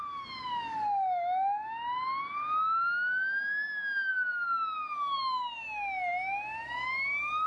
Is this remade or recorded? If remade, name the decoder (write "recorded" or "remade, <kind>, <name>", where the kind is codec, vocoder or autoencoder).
recorded